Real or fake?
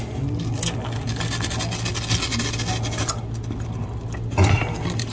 real